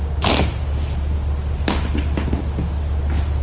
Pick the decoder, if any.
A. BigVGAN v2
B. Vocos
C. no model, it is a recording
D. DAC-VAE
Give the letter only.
C